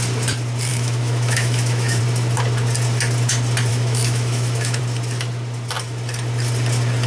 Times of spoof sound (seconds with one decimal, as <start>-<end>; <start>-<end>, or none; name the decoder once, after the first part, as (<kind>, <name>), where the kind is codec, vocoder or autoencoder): 0.7-2.0 (autoencoder, DAC-VAE); 3.7-4.8